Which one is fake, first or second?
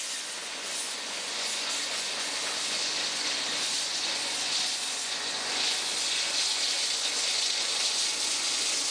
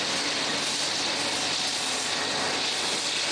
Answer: first